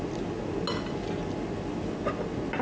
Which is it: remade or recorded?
recorded